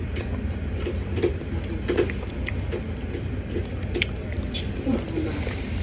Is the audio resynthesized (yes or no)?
no